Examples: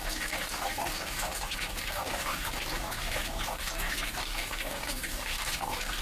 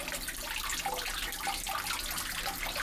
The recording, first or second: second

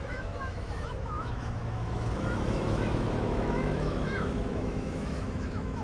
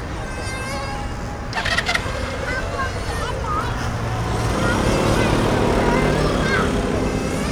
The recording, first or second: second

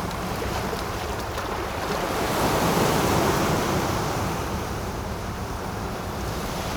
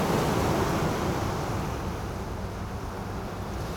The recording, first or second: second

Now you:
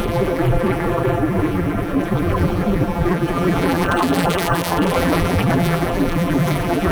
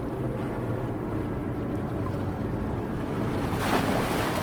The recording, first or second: second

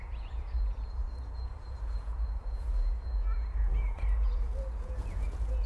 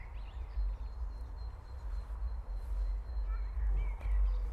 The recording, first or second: second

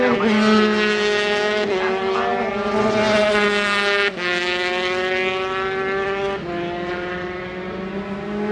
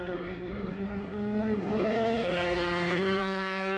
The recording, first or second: first